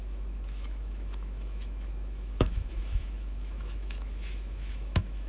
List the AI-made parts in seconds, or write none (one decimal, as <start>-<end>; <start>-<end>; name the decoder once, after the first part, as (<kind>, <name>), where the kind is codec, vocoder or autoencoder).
0.0-5.3 (autoencoder, DAC-VAE)

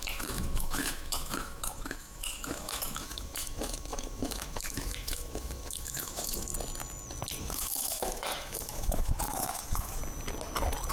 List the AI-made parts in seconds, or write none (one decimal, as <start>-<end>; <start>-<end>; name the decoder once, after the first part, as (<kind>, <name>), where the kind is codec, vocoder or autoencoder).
0.0-6.5 (autoencoder, DAC-VAE); 7.4-10.0